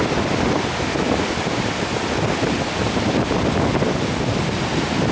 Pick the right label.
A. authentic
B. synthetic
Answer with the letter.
B